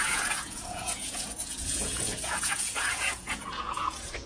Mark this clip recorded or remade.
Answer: remade